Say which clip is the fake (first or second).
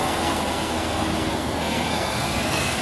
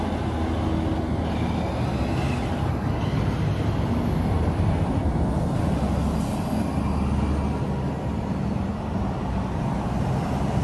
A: first